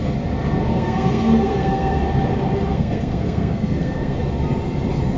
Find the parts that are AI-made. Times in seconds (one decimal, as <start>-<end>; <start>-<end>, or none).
0.7-2.0; 2.7-4.2